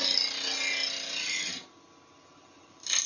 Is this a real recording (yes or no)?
yes